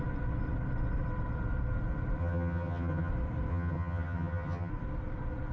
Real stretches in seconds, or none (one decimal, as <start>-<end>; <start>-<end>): 0.0-2.2; 3.1-3.5; 4.7-5.5